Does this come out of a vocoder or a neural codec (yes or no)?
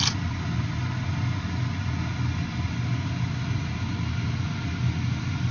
no